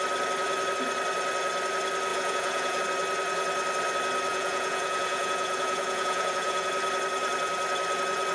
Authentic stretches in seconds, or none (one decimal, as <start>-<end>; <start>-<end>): 0.0-2.1; 2.8-4.3; 6.7-8.3